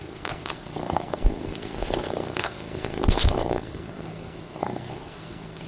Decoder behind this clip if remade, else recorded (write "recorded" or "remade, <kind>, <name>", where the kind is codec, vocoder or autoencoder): remade, codec, SNAC